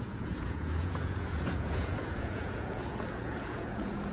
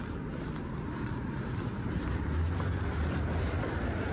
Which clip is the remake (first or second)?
first